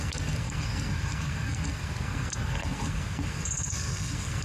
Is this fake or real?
fake